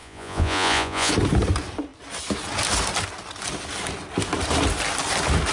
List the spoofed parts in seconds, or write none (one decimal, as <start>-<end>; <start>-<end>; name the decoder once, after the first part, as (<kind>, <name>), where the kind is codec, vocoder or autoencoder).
0.0-1.1 (vocoder, Vocos)